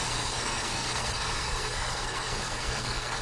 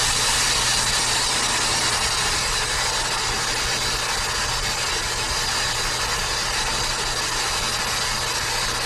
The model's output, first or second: first